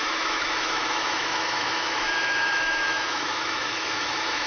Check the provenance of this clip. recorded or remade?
remade